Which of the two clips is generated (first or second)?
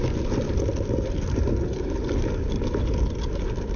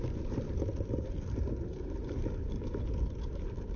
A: second